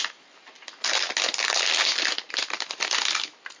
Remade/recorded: recorded